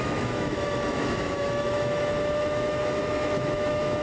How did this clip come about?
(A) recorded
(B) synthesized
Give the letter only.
B